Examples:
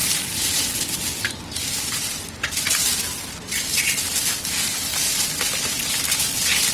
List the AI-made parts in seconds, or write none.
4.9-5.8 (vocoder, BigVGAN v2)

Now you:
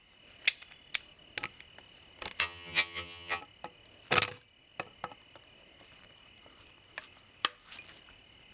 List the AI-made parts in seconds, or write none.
2.4-3.4 (vocoder, HiFi-GAN)

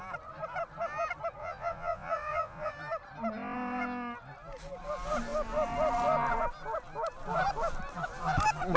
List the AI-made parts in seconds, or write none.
1.4-2.7 (vocoder, Vocos)

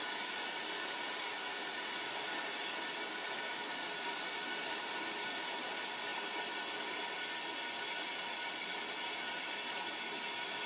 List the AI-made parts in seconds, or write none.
none

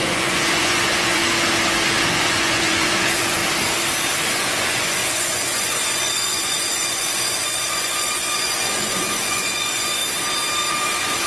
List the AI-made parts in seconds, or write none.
0.0-1.2 (vocoder, Vocos); 2.1-3.4; 4.2-10.0; 10.7-11.3

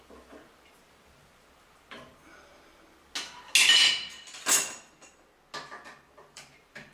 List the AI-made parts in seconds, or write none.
0.0-2.1 (vocoder, BigVGAN v2); 6.2-6.9

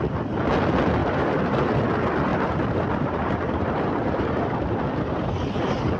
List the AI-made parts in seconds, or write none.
1.0-1.8 (vocoder, BigVGAN v2); 2.3-6.0